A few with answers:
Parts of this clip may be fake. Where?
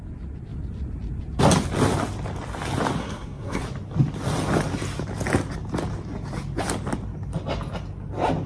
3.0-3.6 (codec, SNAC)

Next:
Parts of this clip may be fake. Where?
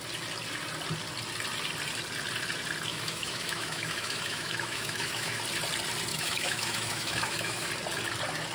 2.9-5.4 (autoencoder, DAC-VAE); 6.1-7.7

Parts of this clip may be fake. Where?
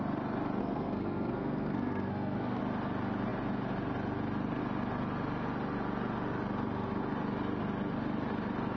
0.6-2.6 (codec, SNAC)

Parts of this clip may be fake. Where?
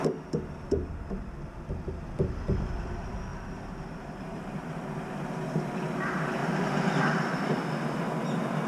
3.3-5.2 (vocoder, BigVGAN v2); 6.4-7.6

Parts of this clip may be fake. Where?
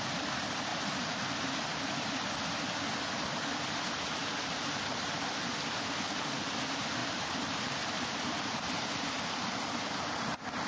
0.7-1.8 (vocoder, BigVGAN v2); 4.2-4.8; 7.0-9.2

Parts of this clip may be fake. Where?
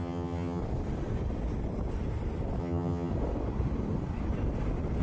0.0-0.6 (vocoder, HiFi-GAN); 2.6-3.1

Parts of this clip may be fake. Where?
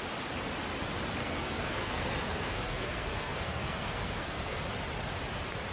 1.2-4.6 (codec, SNAC)